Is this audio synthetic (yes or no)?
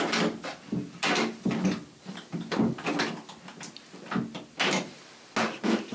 no